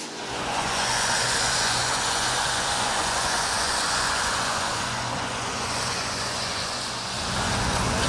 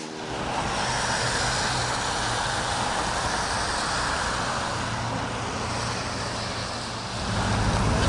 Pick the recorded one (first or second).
second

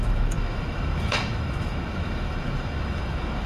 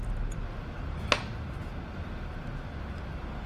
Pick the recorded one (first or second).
second